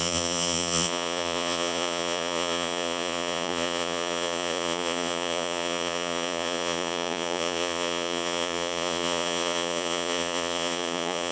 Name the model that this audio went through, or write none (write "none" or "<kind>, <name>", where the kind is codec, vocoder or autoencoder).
vocoder, Vocos